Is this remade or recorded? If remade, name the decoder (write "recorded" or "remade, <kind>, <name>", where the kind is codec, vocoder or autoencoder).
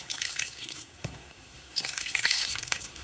remade, codec, SNAC